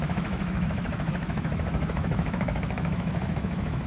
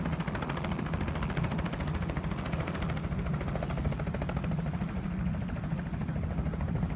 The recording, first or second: second